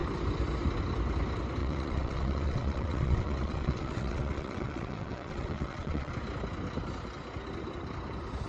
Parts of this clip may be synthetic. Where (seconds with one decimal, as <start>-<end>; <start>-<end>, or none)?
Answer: 1.6-6.1